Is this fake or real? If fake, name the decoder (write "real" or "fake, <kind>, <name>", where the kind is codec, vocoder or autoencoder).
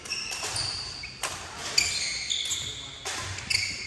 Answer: real